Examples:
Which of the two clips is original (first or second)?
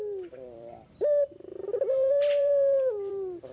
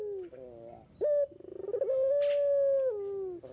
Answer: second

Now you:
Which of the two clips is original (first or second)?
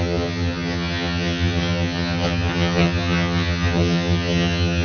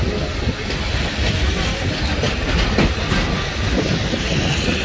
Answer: second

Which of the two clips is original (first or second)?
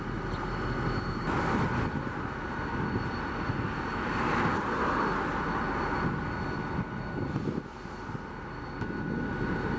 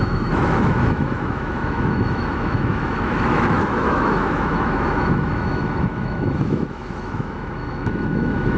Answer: first